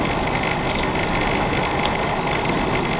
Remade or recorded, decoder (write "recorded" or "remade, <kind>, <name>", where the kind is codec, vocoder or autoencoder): recorded